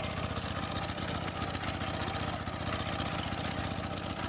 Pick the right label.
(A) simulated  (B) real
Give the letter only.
B